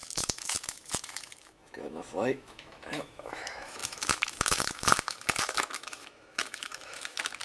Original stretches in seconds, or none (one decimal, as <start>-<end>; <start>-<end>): none